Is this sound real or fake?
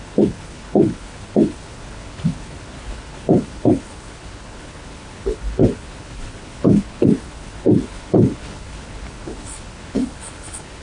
fake